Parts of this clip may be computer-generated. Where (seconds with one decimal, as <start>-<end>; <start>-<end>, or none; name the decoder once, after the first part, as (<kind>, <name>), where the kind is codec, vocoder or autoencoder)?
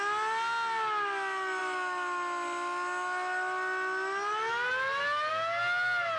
none